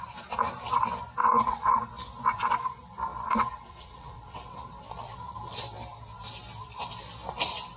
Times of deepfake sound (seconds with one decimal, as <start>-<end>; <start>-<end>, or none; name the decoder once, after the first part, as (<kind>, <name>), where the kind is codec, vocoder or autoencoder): 1.2-1.9 (vocoder, WaveNeXt); 3.1-4.8